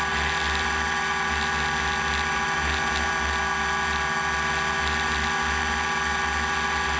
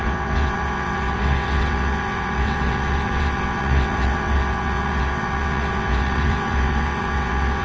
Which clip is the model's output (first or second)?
second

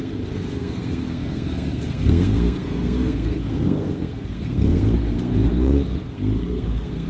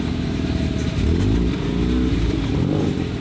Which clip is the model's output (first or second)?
first